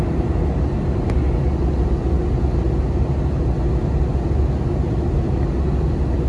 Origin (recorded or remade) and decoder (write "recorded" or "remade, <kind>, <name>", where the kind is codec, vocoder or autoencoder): recorded